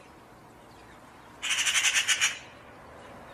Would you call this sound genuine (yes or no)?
yes